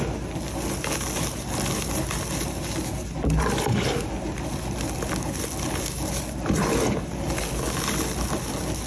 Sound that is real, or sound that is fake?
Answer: real